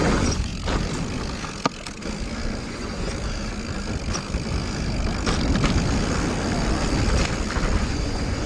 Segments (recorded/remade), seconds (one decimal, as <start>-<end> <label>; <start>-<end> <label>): 0.0-0.5 remade; 0.5-2.6 recorded; 2.6-3.1 remade; 3.1-7.8 recorded; 7.8-8.5 remade

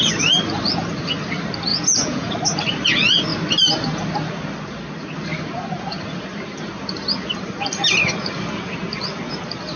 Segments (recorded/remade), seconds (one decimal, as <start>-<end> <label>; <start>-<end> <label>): 0.0-1.7 recorded; 1.7-2.3 remade; 2.3-9.8 recorded